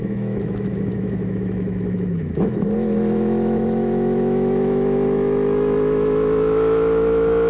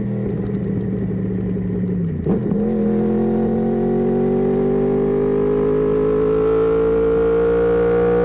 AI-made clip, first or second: first